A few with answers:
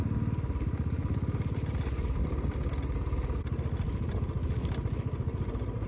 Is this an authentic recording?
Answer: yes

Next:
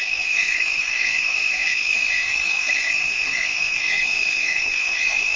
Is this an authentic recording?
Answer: no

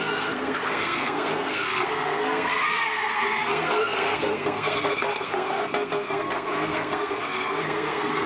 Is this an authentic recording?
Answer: no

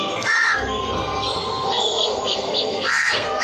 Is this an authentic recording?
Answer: no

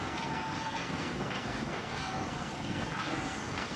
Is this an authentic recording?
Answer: no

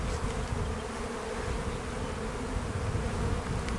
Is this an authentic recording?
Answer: yes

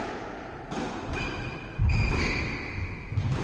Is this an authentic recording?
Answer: yes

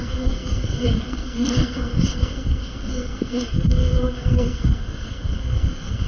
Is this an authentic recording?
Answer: no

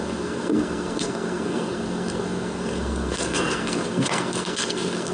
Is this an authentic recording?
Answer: no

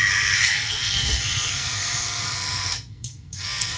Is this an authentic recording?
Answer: no